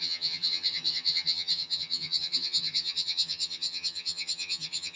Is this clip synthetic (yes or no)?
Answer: yes